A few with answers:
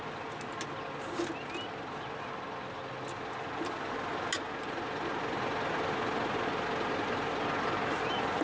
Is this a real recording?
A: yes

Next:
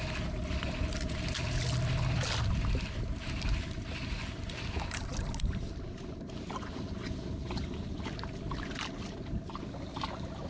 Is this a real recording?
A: yes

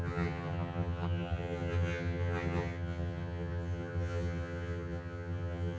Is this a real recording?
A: no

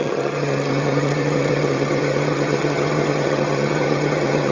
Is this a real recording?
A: no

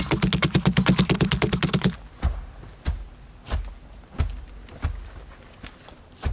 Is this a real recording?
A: yes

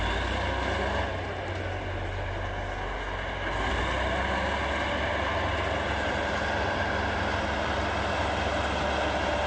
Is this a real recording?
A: yes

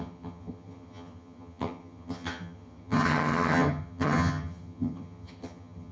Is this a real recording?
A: no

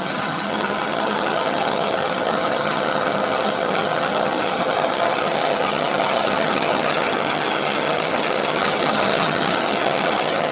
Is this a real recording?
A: no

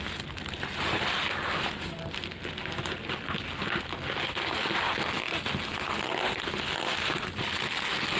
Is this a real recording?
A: yes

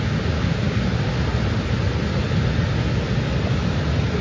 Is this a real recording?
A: yes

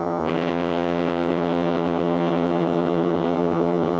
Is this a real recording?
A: no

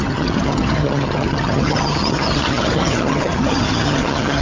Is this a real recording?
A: no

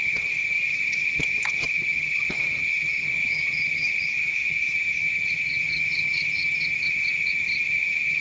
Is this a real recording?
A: no